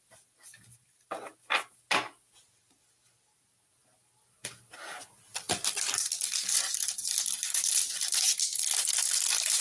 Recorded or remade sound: recorded